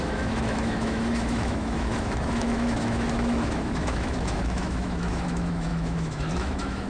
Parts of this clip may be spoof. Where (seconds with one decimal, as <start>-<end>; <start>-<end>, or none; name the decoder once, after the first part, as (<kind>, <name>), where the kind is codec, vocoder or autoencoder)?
0.0-6.9 (autoencoder, DAC-VAE)